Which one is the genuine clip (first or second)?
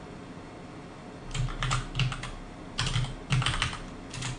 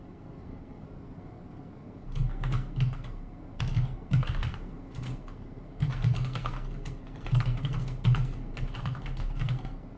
first